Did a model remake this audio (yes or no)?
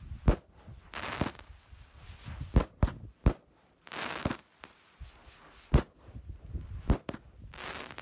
yes